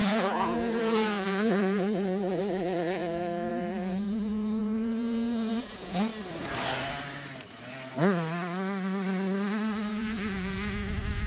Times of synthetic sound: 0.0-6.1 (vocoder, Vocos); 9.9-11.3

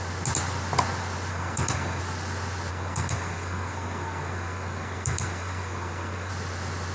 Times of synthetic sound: 1.3-2.0 (codec, SNAC); 2.7-6.3

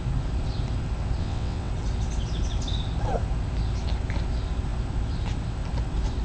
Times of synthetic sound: 1.2-1.7 (vocoder, WaveNeXt)

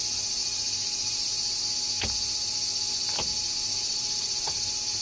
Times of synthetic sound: 0.4-1.6 (vocoder, BigVGAN v2); 3.3-5.0

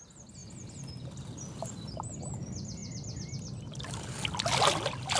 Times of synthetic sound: none

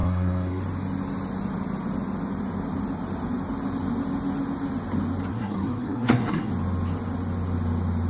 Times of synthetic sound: 0.0-0.6 (codec, SNAC); 5.3-6.5

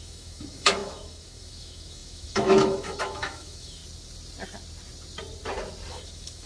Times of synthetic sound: 0.0-3.8 (autoencoder, DAC-VAE); 5.9-6.5